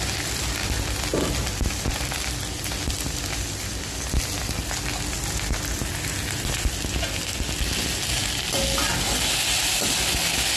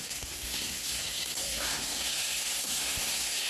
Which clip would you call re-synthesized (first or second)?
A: second